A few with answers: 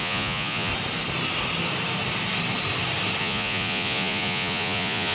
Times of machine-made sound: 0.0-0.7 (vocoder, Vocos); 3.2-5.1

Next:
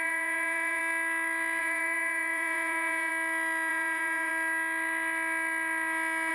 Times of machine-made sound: 0.0-0.8 (vocoder, Vocos); 1.6-3.1; 3.7-4.3

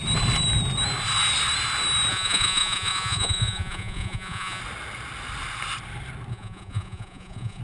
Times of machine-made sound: 2.1-4.6 (vocoder, Vocos); 6.3-7.6